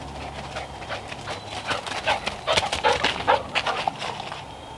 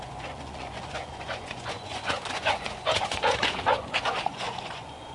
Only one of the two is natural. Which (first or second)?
first